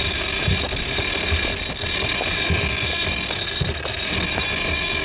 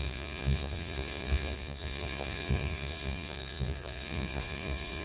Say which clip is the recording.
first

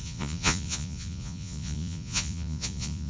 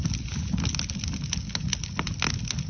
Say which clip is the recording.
second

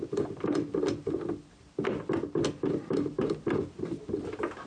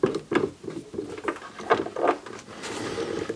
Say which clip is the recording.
second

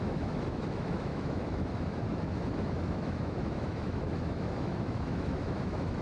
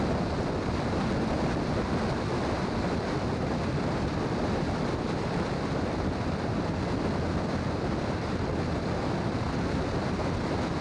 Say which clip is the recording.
second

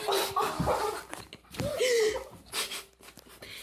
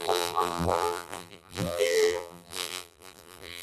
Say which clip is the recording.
first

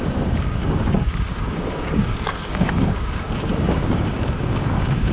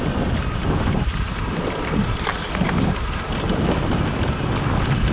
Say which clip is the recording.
second